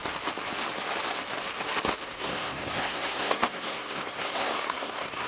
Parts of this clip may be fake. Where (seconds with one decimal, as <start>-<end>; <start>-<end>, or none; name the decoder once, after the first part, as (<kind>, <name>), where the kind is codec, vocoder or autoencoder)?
2.0-5.3 (codec, SNAC)